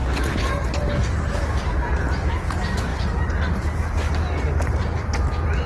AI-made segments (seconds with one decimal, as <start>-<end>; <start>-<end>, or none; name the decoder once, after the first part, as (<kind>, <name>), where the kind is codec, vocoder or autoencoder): none